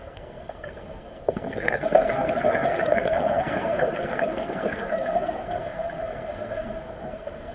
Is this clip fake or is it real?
fake